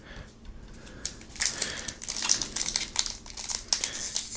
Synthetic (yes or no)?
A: no